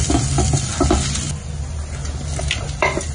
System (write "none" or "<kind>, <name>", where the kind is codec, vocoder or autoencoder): none